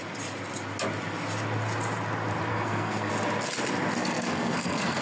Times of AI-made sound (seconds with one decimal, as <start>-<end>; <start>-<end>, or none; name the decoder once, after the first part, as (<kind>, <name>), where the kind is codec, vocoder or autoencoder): 2.5-3.1 (codec, SNAC); 4.0-5.0